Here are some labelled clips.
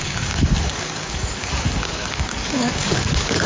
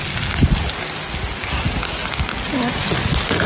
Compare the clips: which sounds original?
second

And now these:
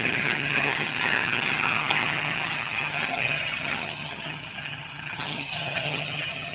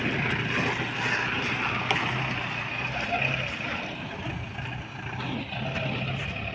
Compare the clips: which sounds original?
second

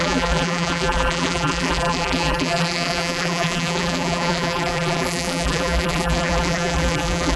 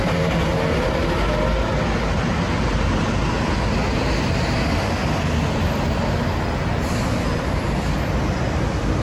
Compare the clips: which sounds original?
second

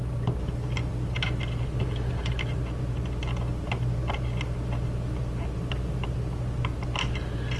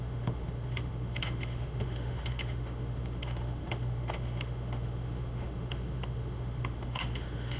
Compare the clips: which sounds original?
first